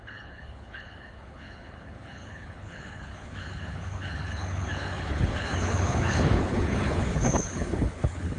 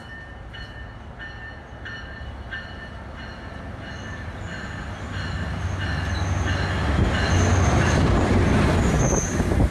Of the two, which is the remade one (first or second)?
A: first